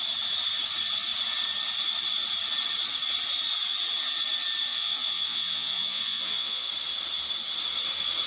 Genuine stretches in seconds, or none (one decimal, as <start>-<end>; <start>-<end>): 0.0-4.7; 6.7-8.3